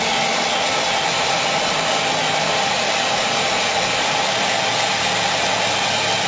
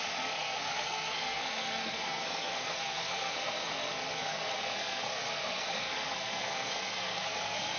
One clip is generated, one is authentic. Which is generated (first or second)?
second